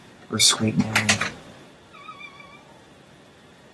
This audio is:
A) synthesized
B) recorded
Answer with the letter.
B